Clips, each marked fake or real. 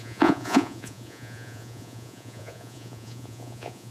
fake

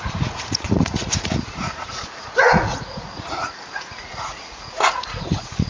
fake